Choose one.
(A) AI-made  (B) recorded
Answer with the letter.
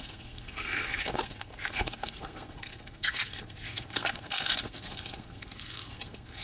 A